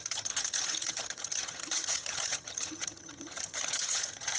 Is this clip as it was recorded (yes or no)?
no